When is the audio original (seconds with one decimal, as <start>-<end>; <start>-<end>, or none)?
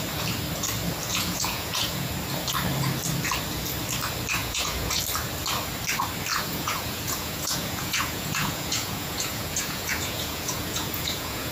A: 0.0-1.1; 2.1-4.4; 5.0-6.3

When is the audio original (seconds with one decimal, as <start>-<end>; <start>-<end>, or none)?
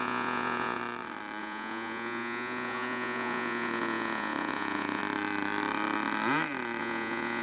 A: 0.8-1.4; 5.0-6.8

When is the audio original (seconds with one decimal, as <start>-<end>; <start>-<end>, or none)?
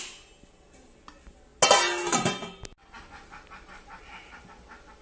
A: 0.0-5.0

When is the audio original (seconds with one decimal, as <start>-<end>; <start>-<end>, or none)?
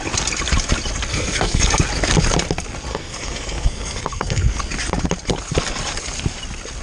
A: 0.0-1.1; 1.8-2.9; 4.6-6.8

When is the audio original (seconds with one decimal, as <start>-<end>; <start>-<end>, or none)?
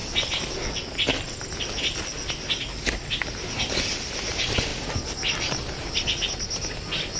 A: 0.0-7.2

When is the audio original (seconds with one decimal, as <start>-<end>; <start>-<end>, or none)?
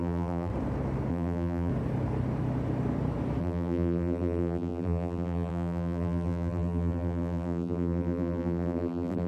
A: 0.5-1.1; 1.7-3.4